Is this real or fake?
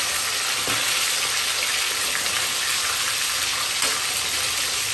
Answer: real